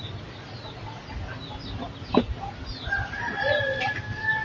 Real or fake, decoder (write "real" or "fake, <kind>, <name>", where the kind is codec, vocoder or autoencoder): real